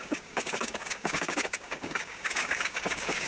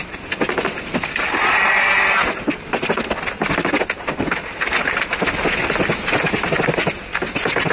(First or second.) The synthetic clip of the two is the first